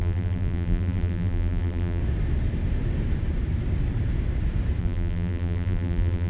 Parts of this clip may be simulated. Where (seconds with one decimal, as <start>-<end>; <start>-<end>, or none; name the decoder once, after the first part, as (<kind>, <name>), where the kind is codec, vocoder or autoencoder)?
0.0-2.0 (vocoder, BigVGAN v2); 4.8-6.3